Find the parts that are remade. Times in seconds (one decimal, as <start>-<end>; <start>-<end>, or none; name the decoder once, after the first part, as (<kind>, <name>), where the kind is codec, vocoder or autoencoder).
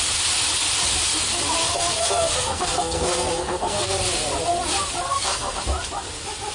1.6-4.0 (codec, SNAC); 5.1-5.6